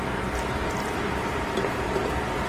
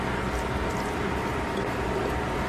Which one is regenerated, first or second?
first